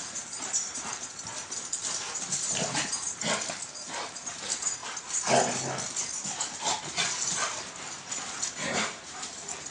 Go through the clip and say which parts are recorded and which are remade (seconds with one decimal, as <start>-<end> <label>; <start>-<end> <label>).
0.0-4.8 remade; 4.8-8.5 recorded; 8.5-9.7 remade